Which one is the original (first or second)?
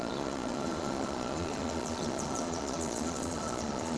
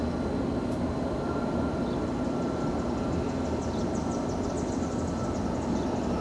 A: second